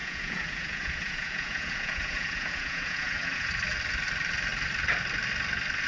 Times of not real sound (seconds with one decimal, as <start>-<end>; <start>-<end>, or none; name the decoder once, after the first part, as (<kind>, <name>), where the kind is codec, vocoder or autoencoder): 0.0-3.5 (vocoder, Vocos)